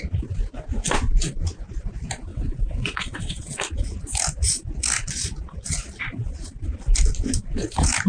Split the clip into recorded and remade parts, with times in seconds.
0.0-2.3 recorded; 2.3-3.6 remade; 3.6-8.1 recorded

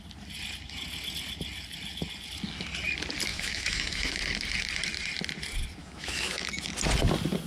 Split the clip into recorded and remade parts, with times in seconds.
0.0-3.3 recorded; 3.3-4.2 remade; 4.2-5.8 recorded; 5.8-6.7 remade; 6.7-7.5 recorded